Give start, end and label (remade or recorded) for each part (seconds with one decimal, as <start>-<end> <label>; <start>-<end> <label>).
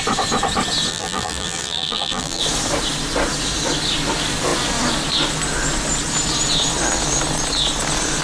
0.0-0.9 recorded; 0.9-2.4 remade; 2.4-8.2 recorded